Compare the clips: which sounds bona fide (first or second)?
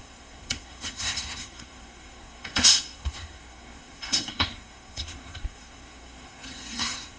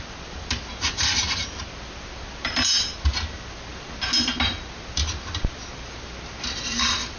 second